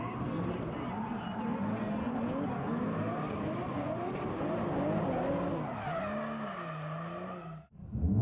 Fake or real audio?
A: real